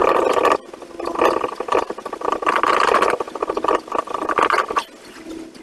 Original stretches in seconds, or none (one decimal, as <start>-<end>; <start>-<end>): 0.0-5.6